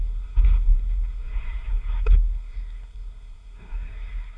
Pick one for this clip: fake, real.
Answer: fake